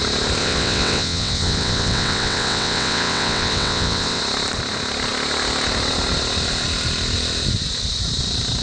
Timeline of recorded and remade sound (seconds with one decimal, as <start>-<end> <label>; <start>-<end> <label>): 0.0-0.4 recorded; 0.4-4.2 remade; 4.2-8.6 recorded